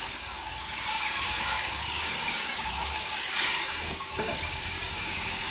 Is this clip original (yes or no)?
no